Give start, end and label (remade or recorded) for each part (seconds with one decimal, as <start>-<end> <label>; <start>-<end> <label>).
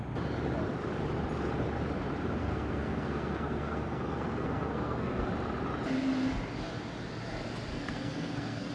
0.0-2.4 recorded; 2.4-5.3 remade; 5.3-7.7 recorded; 7.7-8.7 remade